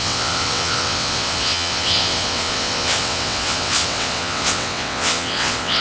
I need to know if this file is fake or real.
fake